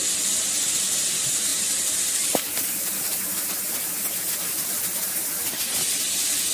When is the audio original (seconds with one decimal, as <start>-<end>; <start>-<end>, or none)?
0.8-1.5; 3.1-6.5

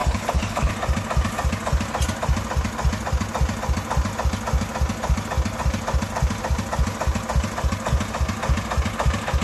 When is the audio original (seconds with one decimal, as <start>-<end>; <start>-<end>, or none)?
0.7-9.4

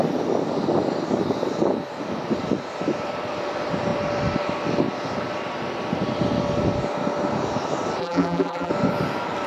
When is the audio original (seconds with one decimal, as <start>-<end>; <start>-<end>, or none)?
0.0-8.0; 8.7-9.5

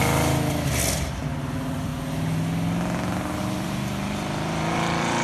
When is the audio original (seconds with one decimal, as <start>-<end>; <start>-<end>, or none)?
0.0-1.0; 1.9-3.4

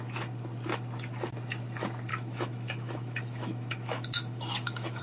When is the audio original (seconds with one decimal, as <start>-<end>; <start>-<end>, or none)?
0.0-2.1

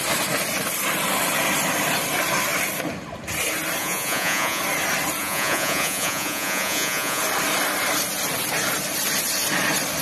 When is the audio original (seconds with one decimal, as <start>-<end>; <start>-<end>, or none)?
0.0-3.8; 4.6-5.2; 7.2-10.0

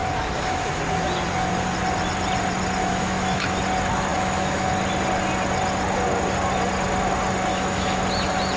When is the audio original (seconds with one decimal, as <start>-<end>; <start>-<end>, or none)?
0.8-2.8; 3.6-4.1; 4.7-7.5; 8.0-8.6

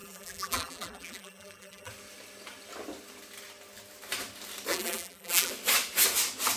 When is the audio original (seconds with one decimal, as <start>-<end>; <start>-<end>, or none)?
1.9-4.7; 5.5-6.6